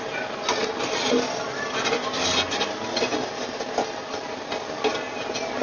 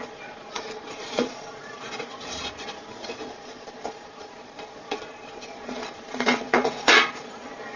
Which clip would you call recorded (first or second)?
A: first